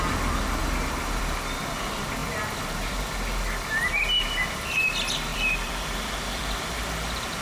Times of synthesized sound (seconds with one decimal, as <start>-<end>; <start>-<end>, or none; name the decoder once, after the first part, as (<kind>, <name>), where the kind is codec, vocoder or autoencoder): 5.3-7.4 (vocoder, BigVGAN v2)